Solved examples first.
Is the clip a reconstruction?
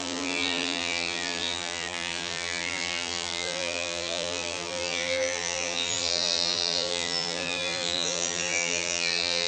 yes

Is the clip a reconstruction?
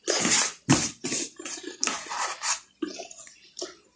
yes